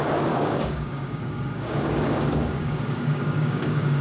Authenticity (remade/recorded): remade